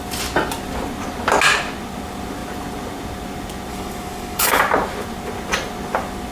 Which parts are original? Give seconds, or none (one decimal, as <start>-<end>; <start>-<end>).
0.0-3.7; 4.6-6.3